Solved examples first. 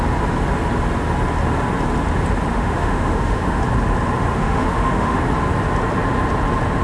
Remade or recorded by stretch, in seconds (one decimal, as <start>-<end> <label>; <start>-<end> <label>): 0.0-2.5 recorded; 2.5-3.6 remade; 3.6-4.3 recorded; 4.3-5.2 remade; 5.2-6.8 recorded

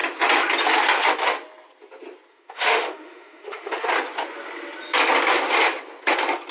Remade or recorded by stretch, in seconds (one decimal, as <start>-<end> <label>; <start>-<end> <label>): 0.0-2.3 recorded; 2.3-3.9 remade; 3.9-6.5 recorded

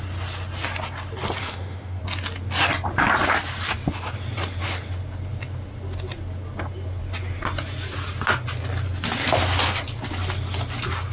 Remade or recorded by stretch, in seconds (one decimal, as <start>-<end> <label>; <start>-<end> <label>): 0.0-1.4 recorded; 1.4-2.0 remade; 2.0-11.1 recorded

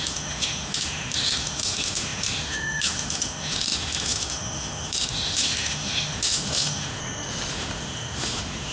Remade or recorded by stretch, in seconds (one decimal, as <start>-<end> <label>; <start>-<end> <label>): 0.0-7.0 remade; 7.0-7.5 recorded; 7.5-8.7 remade

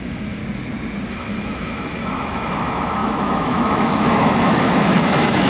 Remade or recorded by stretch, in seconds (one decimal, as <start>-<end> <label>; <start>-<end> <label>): 0.0-0.4 remade; 0.4-1.1 recorded; 1.1-5.5 remade

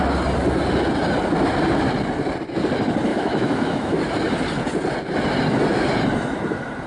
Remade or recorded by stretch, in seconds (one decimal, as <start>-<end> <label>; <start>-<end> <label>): 0.0-3.1 recorded; 3.1-4.0 remade; 4.0-6.9 recorded

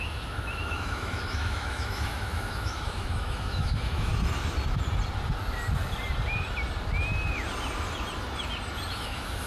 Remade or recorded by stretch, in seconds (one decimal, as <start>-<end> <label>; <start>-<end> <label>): 0.0-4.1 remade; 4.1-8.9 recorded; 8.9-9.5 remade

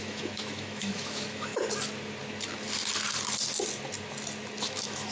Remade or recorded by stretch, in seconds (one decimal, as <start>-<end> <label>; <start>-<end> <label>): 0.0-1.5 remade; 1.5-4.6 recorded; 4.6-5.1 remade